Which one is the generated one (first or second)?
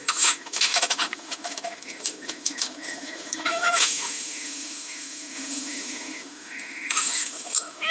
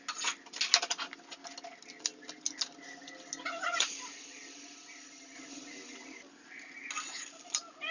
first